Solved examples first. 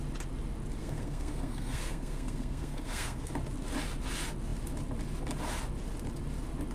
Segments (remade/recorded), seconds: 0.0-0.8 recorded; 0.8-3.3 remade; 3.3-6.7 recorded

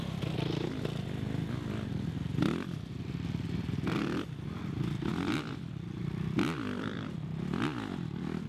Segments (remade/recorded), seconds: 0.0-8.5 recorded

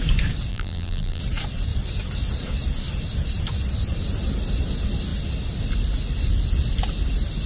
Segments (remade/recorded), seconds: 0.0-0.5 recorded; 0.5-1.2 remade; 1.2-7.5 recorded

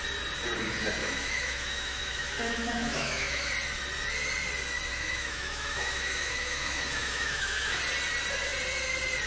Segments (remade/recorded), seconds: 0.0-1.0 recorded; 1.0-3.5 remade; 3.5-4.9 recorded; 4.9-7.8 remade; 7.8-9.3 recorded

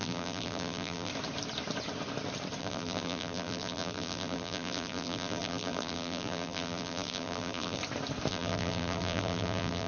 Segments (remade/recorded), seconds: 0.0-1.1 remade; 1.1-2.6 recorded; 2.6-7.8 remade; 7.8-8.3 recorded; 8.3-9.9 remade